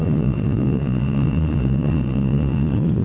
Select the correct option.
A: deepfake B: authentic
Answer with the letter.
A